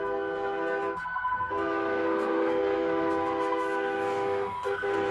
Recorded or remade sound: remade